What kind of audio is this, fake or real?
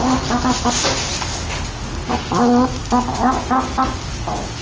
real